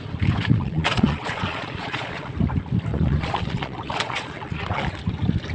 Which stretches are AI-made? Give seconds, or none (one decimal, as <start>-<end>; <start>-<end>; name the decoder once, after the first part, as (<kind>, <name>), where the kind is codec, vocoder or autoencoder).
0.5-2.3 (vocoder, Vocos); 2.9-4.9